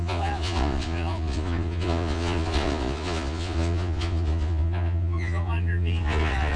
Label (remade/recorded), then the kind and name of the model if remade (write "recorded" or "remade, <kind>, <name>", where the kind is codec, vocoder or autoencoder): remade, vocoder, Vocos